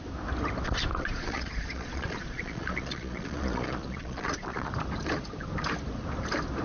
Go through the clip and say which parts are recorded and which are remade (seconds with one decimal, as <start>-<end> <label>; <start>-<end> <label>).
0.0-0.9 recorded; 0.9-4.7 remade; 4.7-6.6 recorded